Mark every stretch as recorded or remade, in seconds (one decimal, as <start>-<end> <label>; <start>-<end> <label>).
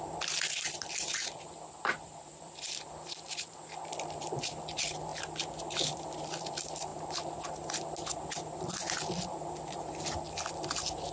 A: 0.0-5.1 remade; 5.1-5.9 recorded; 5.9-6.9 remade; 6.9-10.5 recorded; 10.5-11.1 remade